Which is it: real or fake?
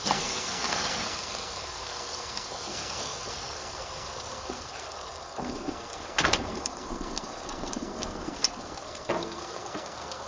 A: fake